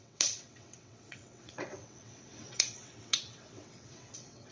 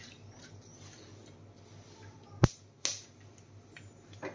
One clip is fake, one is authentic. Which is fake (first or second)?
first